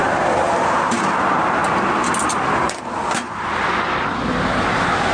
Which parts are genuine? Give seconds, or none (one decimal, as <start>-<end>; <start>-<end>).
1.1-5.1